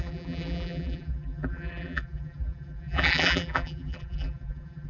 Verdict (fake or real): fake